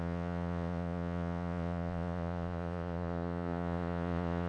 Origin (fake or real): fake